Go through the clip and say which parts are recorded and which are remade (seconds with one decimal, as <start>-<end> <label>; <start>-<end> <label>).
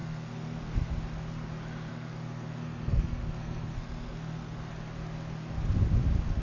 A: 0.0-0.9 remade; 0.9-1.9 recorded; 1.9-4.7 remade; 4.7-6.4 recorded